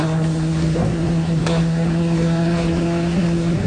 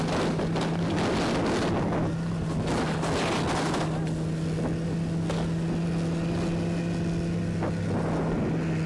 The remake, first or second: first